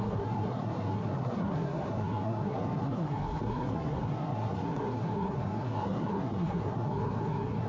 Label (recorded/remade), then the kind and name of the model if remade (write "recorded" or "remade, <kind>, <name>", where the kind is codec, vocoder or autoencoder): remade, codec, SNAC